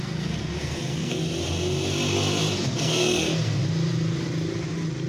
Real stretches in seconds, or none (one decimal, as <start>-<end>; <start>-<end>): 1.2-2.7; 3.6-5.1